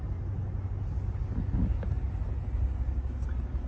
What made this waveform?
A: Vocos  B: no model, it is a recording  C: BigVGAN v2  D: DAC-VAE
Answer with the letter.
B